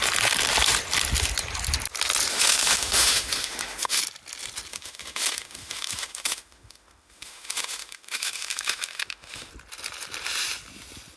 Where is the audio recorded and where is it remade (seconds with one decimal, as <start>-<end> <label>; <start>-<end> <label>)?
0.0-2.3 recorded; 2.3-4.0 remade; 4.0-4.7 recorded; 4.7-9.5 remade; 9.5-11.2 recorded